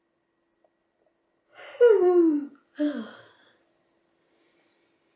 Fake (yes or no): no